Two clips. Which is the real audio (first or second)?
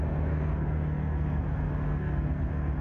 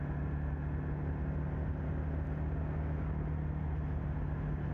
second